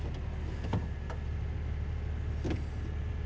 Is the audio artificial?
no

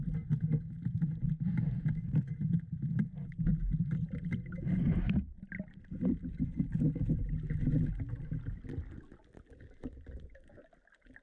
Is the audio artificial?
no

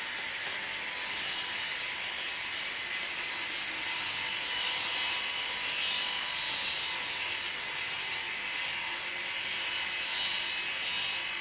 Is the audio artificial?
no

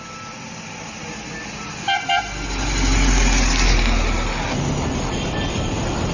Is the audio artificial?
no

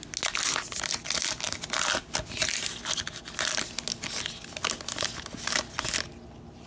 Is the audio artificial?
no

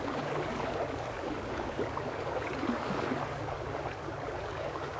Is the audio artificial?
yes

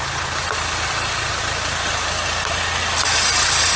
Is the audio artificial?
no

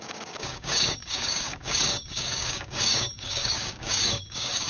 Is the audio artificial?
yes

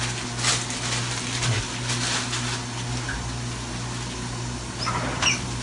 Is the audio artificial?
no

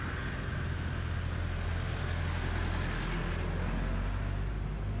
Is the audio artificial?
no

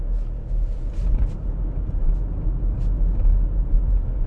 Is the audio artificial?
no